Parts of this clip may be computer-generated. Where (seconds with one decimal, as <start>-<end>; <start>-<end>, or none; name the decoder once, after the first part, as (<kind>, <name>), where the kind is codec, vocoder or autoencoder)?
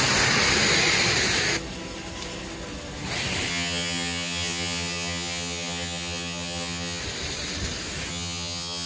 3.5-7.0 (vocoder, HiFi-GAN); 8.1-8.9